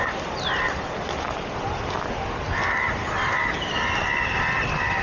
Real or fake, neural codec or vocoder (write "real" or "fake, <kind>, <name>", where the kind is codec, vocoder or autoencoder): real